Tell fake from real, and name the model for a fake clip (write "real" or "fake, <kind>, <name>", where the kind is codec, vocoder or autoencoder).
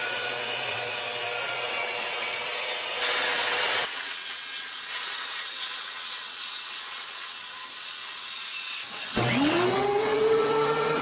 fake, vocoder, WaveNeXt